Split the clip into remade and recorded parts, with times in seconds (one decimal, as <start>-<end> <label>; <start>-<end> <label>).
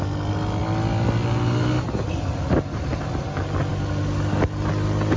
0.0-5.2 recorded